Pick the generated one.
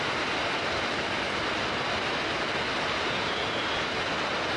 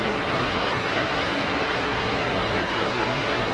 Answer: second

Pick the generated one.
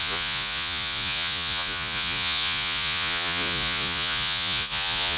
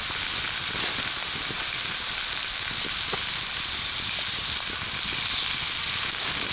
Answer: first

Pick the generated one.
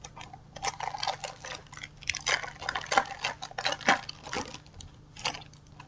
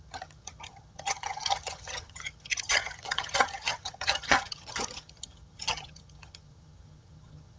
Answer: second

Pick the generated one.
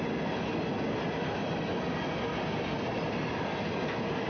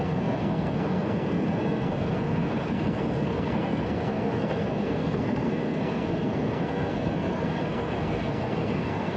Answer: second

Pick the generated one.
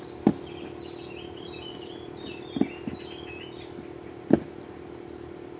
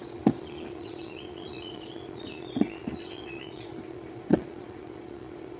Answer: second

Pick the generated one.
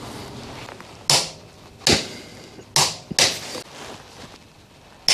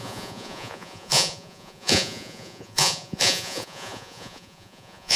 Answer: second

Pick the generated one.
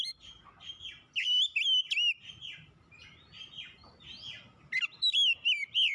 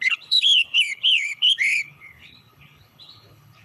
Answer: second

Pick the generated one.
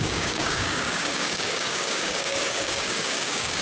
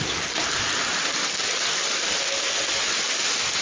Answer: first